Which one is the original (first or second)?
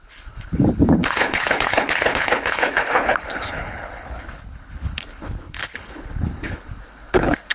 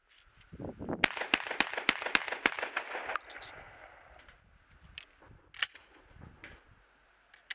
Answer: second